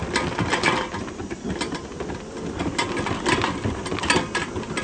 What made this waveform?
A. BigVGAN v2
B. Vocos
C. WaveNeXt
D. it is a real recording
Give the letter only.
D